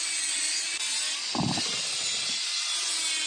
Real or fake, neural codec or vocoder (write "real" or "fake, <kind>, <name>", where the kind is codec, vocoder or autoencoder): real